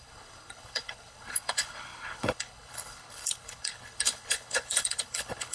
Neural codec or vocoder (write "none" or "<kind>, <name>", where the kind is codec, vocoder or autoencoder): codec, HILCodec